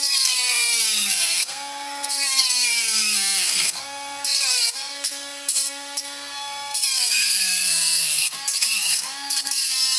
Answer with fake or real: fake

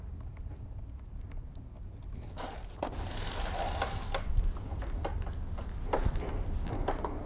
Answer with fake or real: real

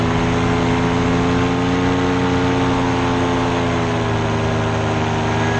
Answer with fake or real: real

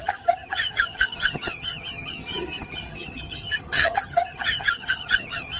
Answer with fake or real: fake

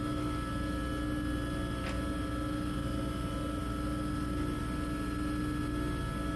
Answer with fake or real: real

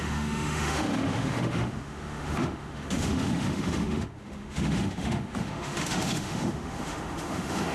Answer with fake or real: fake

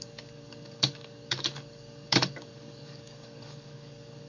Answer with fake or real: fake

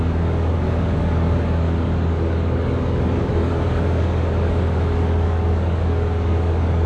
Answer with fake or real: fake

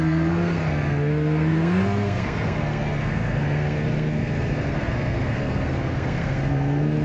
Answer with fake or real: fake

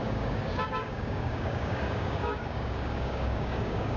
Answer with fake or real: fake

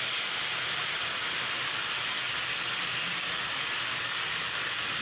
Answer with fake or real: real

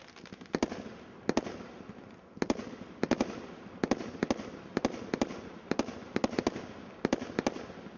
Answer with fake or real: real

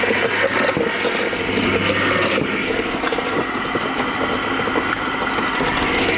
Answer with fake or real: real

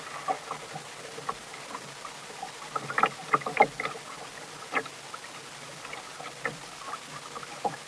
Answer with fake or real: real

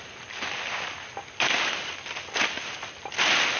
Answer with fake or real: real